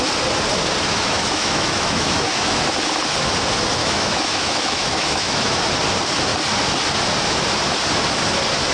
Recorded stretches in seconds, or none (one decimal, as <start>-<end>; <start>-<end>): 0.0-0.9; 2.6-3.8; 5.7-8.7

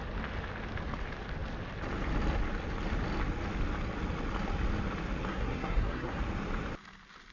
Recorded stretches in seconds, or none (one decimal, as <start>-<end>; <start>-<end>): 0.0-5.3; 6.2-7.3

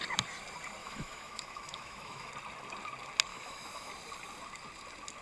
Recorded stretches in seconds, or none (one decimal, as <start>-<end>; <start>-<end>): 0.0-0.8; 2.3-3.3; 3.9-5.2

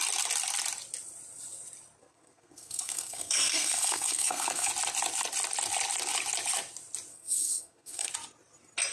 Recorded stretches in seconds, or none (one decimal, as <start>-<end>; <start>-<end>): 0.0-2.0; 4.7-7.1; 8.1-8.9

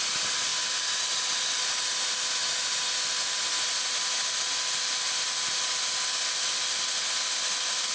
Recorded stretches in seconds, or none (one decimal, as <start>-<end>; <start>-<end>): 0.0-7.9

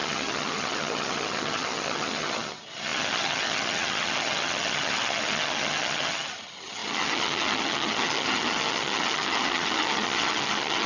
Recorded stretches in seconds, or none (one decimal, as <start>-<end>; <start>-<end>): none

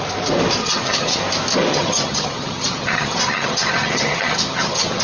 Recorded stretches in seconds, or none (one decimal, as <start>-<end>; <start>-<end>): 0.0-0.6; 1.2-1.7

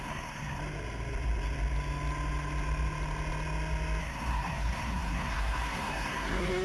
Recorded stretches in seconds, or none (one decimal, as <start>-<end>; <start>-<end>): 0.6-4.0